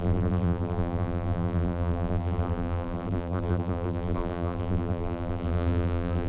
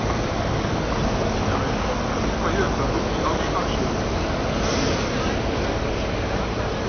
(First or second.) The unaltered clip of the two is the second